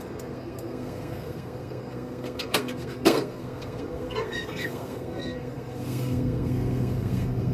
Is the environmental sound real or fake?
fake